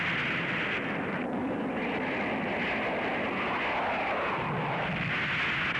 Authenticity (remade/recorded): recorded